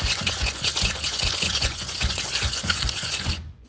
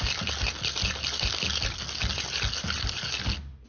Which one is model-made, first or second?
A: first